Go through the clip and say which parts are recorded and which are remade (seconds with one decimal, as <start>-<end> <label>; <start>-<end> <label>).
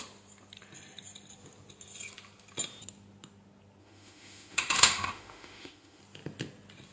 0.0-3.8 recorded; 3.8-6.0 remade; 6.0-6.9 recorded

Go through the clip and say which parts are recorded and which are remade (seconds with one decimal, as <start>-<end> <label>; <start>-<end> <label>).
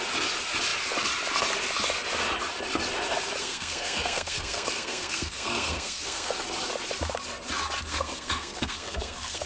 0.0-3.4 recorded; 3.4-6.3 remade; 6.3-7.9 recorded; 7.9-9.5 remade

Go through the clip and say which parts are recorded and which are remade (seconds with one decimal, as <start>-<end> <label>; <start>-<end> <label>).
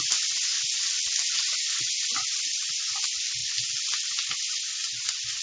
0.0-0.5 remade; 0.5-1.8 recorded; 1.8-3.4 remade; 3.4-4.5 recorded; 4.5-5.4 remade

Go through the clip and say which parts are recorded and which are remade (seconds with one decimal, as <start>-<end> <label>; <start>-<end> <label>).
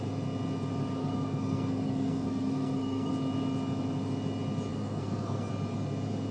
0.0-1.0 recorded; 1.0-3.1 remade; 3.1-4.7 recorded; 4.7-5.5 remade; 5.5-6.3 recorded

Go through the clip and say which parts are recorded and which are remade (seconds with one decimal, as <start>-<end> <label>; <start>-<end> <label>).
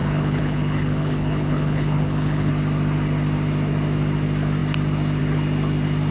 0.0-2.5 remade; 2.5-6.1 recorded